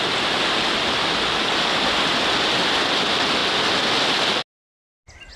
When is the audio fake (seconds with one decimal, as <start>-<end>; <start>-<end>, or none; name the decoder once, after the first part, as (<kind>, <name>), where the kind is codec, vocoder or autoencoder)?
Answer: none